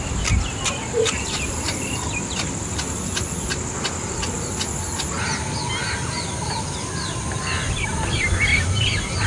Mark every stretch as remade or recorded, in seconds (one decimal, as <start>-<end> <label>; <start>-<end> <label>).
0.0-9.3 recorded